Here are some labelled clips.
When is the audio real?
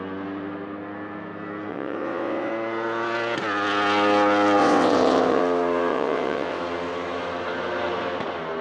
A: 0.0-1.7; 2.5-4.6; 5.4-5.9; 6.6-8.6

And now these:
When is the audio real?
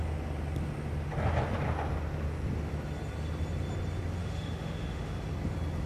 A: 0.0-4.2; 5.2-5.9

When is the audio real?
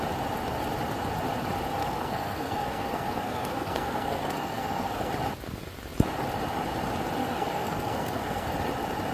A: 0.0-1.8; 5.1-7.2; 8.5-9.1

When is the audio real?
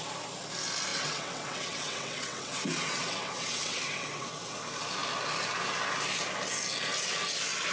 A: 0.0-0.9; 4.5-7.7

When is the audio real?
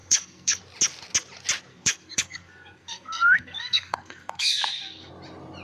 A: 0.6-1.7; 5.1-5.6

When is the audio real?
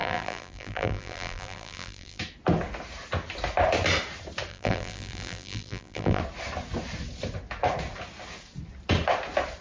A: 2.2-4.5; 6.2-9.6